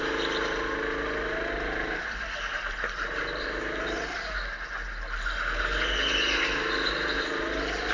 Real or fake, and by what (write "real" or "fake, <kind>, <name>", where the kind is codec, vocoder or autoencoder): real